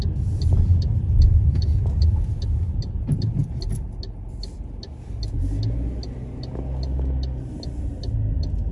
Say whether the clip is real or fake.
real